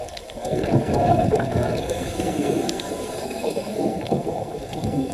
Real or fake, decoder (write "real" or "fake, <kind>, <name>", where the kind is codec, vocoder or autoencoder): fake, codec, SNAC